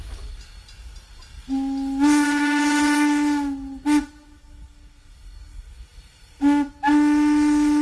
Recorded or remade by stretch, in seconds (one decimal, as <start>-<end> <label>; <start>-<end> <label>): 0.0-7.8 recorded